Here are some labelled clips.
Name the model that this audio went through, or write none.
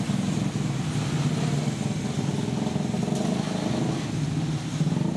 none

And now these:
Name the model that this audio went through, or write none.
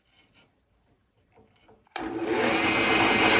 none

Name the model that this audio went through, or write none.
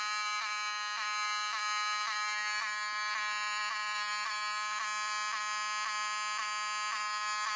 none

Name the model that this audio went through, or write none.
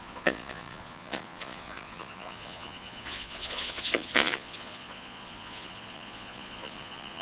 vocoder, Vocos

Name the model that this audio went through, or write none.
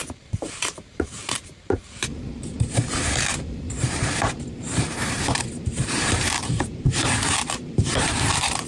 vocoder, BigVGAN v2